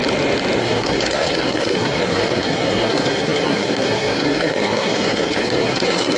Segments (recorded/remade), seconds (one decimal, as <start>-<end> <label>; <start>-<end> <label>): 0.0-0.6 recorded; 0.6-6.2 remade